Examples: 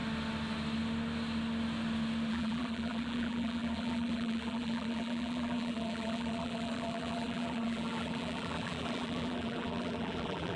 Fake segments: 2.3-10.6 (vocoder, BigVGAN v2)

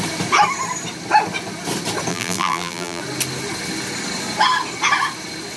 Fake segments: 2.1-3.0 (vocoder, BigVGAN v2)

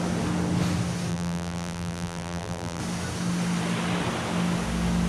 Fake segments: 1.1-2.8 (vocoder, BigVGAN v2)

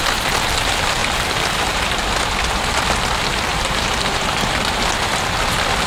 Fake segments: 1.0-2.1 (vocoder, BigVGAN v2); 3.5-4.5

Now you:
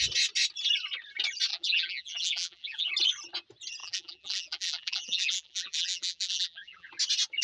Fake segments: 1.5-2.9 (vocoder, BigVGAN v2); 3.8-6.9

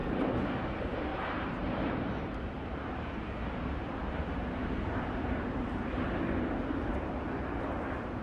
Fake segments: 0.0-0.6 (vocoder, BigVGAN v2); 1.1-6.0

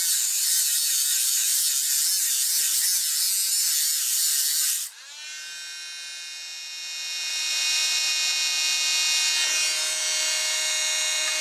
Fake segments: 7.3-8.1 (vocoder, BigVGAN v2)